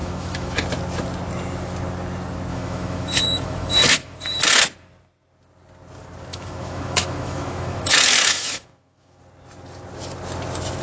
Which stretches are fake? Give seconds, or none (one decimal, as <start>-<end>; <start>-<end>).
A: 0.0-0.6; 2.5-4.4; 6.3-9.2